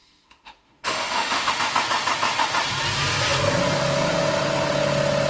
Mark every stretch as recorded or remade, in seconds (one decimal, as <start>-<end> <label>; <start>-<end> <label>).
0.0-1.5 remade; 1.5-5.3 recorded

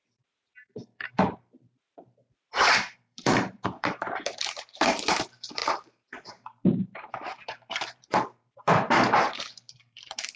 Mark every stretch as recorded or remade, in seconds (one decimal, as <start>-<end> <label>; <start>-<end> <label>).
0.0-10.4 remade

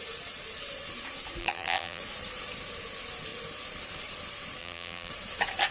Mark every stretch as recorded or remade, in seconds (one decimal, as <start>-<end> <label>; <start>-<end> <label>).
0.0-1.4 recorded; 1.4-2.0 remade; 2.0-4.6 recorded; 4.6-5.1 remade; 5.1-5.7 recorded

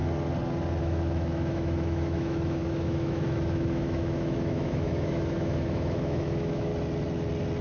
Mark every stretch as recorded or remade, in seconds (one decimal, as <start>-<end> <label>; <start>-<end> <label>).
0.0-0.8 recorded; 0.8-6.7 remade; 6.7-7.6 recorded

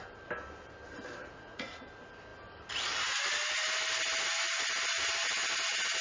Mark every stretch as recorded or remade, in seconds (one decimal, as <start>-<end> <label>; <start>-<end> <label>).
0.0-1.2 recorded; 1.2-1.8 remade; 1.8-6.0 recorded

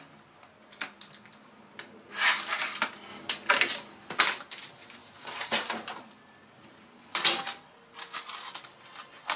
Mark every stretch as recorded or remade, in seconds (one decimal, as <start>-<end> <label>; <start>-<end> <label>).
0.0-5.0 recorded; 5.0-6.0 remade; 6.0-9.4 recorded

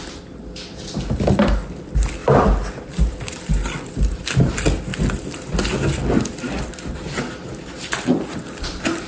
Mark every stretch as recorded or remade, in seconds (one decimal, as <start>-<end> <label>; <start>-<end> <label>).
0.0-9.1 recorded

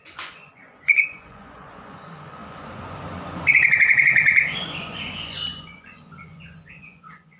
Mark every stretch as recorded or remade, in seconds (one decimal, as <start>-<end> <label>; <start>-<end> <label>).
0.0-7.4 remade